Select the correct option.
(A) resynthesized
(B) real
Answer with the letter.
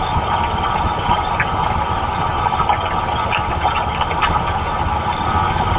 B